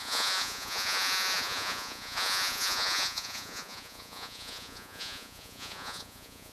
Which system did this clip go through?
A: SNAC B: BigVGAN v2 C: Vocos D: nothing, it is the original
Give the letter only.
C